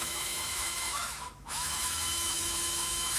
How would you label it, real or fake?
fake